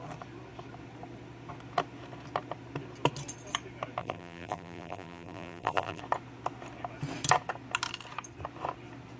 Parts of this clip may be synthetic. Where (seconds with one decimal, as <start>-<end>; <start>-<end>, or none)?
4.0-6.0

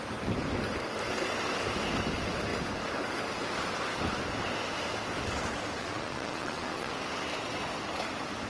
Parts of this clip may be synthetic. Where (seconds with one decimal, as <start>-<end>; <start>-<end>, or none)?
5.8-6.9

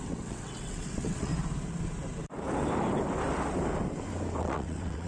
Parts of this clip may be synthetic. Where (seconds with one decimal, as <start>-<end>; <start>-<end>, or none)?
0.0-1.3; 4.4-5.1

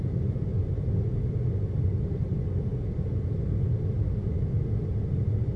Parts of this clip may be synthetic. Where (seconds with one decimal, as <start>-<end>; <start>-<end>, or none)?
none

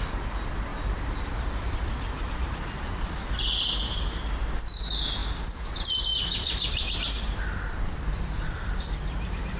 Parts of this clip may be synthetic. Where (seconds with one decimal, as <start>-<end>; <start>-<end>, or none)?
0.7-1.5

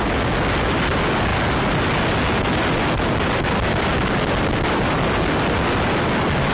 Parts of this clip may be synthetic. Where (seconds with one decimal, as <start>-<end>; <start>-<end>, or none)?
none